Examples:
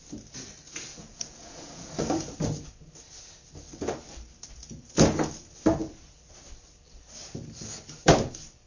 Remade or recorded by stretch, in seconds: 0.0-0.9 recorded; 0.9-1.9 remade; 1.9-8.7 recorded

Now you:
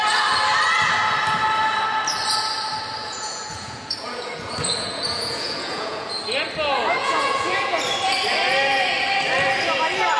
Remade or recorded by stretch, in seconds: 0.0-3.0 recorded; 3.0-6.1 remade; 6.1-7.0 recorded; 7.0-7.8 remade; 7.8-10.2 recorded